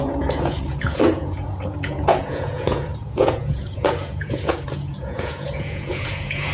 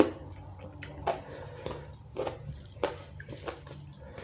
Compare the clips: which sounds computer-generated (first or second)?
first